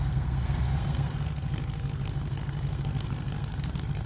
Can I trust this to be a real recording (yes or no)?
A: no